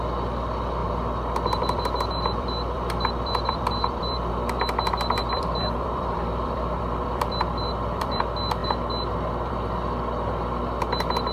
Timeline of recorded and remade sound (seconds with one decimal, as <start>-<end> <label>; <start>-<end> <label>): 0.0-0.8 recorded; 0.8-4.3 remade; 4.3-5.2 recorded; 5.2-8.2 remade; 8.2-11.3 recorded